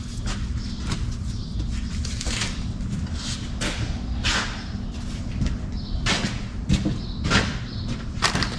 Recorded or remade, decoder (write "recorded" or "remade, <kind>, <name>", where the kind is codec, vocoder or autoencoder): recorded